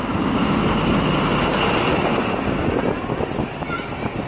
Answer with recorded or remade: recorded